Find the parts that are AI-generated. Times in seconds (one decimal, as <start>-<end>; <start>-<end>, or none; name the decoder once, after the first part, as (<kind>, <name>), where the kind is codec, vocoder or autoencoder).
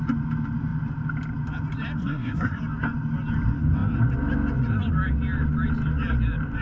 2.0-2.6 (codec, SNAC)